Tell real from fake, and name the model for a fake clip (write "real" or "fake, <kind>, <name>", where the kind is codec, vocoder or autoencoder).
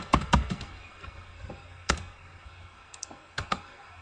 fake, codec, SNAC